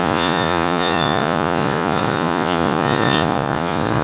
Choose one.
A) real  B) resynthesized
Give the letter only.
B